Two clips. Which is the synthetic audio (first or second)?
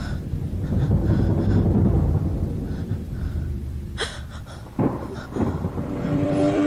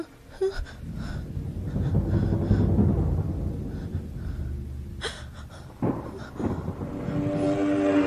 first